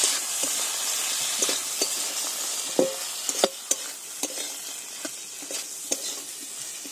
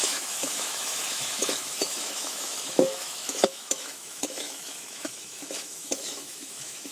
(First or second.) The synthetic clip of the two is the second